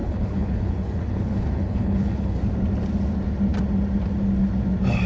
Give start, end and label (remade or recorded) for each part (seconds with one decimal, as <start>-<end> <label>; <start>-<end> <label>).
0.0-2.4 remade; 2.4-5.1 recorded